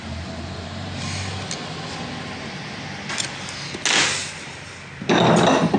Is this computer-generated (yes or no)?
no